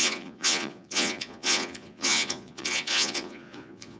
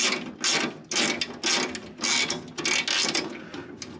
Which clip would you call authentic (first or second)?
second